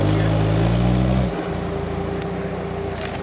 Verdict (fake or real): real